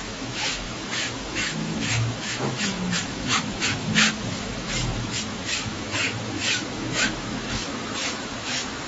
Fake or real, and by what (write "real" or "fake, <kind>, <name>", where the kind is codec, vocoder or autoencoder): fake, autoencoder, DAC-VAE